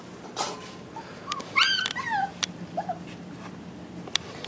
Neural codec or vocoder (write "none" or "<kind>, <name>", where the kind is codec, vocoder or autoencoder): none